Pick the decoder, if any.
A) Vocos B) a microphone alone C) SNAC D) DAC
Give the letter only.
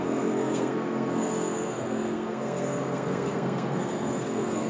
C